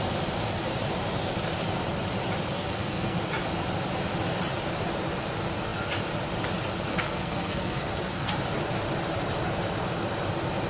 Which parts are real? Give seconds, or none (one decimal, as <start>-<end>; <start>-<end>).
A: 0.0-2.5; 3.2-6.9; 8.3-10.7